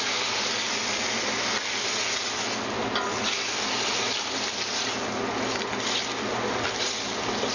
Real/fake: real